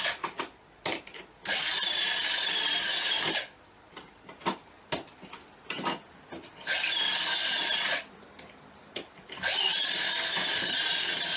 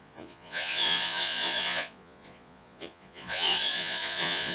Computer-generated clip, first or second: second